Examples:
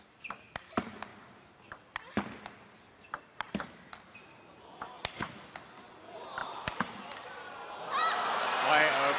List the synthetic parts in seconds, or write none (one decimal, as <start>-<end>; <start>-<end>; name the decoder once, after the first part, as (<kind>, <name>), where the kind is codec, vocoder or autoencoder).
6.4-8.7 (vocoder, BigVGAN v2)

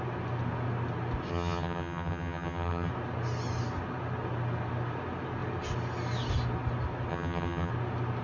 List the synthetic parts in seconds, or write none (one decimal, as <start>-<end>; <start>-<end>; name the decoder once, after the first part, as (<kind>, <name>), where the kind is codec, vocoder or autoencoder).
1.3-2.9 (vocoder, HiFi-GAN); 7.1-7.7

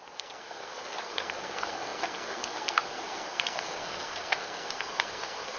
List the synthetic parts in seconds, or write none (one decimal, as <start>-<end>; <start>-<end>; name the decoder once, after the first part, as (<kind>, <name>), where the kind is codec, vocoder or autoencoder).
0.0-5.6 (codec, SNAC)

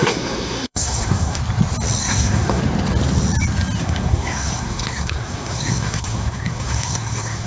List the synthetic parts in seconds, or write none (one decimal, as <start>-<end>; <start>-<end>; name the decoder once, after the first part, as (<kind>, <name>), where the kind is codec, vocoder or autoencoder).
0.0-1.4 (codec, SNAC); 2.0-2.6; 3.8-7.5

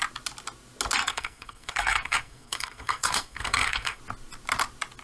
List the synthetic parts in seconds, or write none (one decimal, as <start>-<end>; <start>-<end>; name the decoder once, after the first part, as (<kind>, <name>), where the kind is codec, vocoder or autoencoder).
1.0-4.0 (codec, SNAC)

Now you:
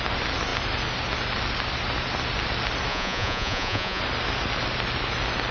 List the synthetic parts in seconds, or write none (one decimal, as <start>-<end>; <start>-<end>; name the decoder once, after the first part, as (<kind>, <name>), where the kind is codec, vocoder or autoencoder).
2.9-4.0 (vocoder, Vocos)

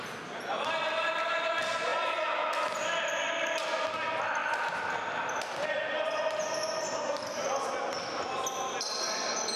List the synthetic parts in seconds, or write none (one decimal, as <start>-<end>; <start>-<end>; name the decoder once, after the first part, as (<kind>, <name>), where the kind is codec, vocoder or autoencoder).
none